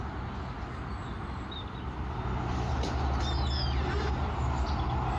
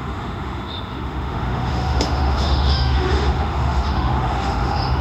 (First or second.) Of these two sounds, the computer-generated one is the second